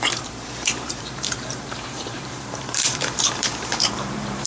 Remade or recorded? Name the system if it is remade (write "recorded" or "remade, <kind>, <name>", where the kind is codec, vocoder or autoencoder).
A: remade, vocoder, BigVGAN v2